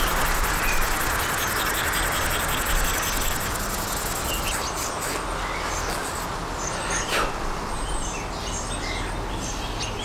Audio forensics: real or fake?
real